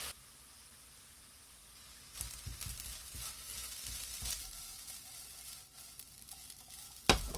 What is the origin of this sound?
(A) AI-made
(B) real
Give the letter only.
B